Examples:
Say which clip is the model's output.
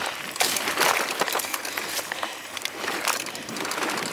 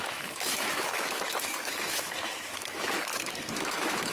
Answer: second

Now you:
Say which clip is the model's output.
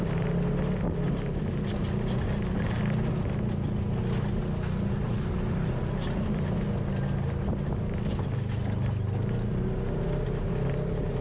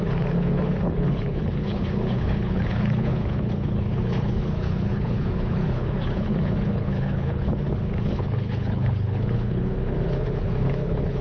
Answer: second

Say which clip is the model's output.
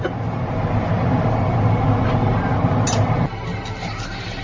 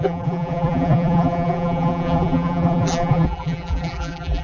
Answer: second